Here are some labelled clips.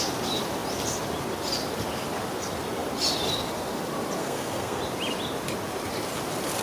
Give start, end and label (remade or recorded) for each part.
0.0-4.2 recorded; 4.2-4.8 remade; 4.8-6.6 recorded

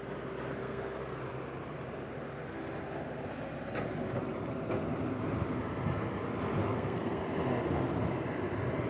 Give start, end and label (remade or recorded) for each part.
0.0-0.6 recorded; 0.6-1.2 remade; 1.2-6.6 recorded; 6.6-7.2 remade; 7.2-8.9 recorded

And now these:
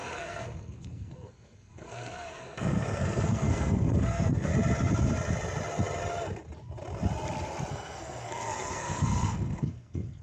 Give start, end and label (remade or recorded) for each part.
0.0-4.5 remade; 4.5-7.7 recorded; 7.7-10.2 remade